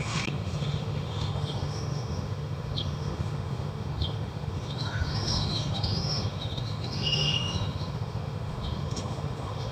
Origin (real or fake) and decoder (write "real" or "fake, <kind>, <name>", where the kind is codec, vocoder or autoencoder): fake, autoencoder, DAC-VAE